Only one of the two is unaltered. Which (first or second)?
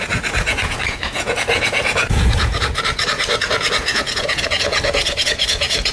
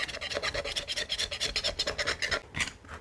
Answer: second